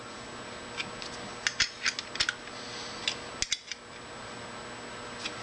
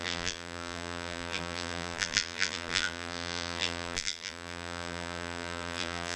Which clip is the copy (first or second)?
second